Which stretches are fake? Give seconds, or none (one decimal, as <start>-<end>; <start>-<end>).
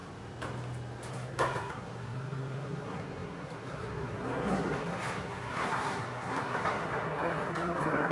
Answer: 1.1-8.1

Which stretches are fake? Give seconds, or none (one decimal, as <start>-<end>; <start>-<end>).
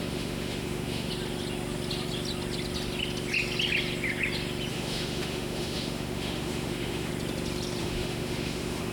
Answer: 0.0-1.1; 4.7-7.1; 7.8-8.9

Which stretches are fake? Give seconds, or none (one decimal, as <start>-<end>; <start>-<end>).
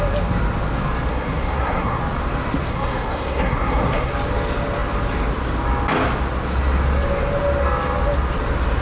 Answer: 1.1-2.0; 2.7-4.1